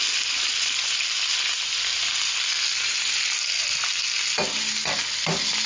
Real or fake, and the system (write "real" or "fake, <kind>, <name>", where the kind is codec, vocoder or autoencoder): real